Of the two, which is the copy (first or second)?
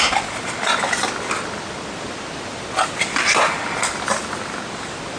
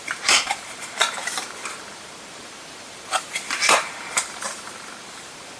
second